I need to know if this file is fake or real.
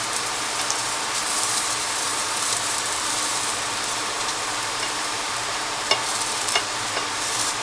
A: fake